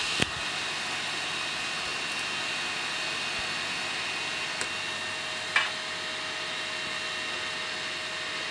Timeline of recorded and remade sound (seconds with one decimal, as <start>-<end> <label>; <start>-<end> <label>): 0.0-8.5 recorded